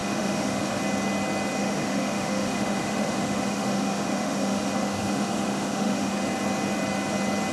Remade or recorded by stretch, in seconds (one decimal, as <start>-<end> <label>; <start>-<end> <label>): 0.0-0.8 remade; 0.8-1.6 recorded; 1.6-6.1 remade; 6.1-7.5 recorded